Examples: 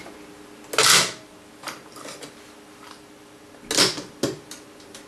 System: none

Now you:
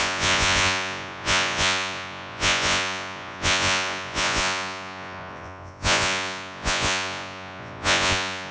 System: vocoder, Vocos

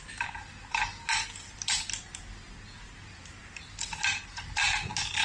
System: none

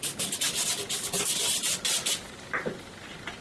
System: none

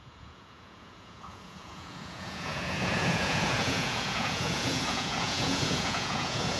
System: vocoder, Vocos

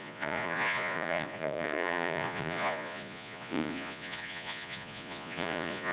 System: vocoder, Vocos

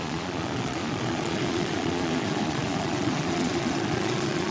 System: vocoder, Vocos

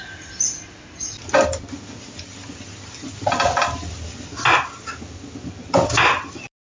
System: none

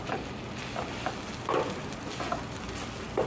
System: none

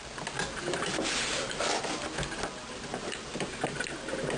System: none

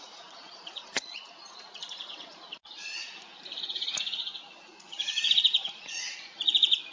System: vocoder, Vocos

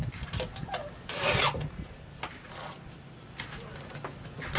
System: none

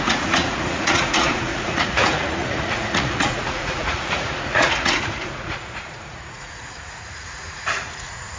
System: vocoder, Vocos